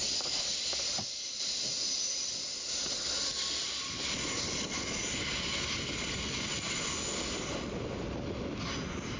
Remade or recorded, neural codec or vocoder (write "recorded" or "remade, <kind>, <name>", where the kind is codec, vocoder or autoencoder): recorded